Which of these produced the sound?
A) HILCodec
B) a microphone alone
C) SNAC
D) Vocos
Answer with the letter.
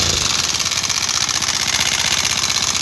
B